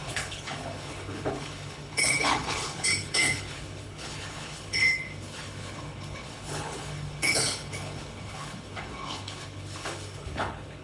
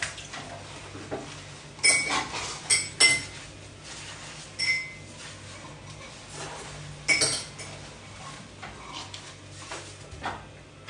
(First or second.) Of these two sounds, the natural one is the second